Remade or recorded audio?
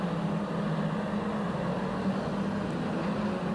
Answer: recorded